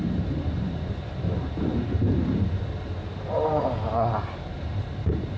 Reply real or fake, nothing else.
fake